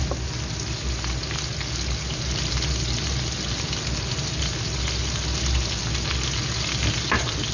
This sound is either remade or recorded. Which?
recorded